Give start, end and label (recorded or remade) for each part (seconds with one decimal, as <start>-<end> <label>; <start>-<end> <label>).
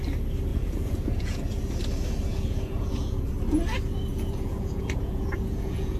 0.0-0.5 recorded; 0.5-1.4 remade; 1.4-2.3 recorded; 2.3-3.3 remade; 3.3-4.1 recorded; 4.1-6.0 remade